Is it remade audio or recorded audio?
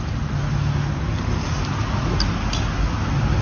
recorded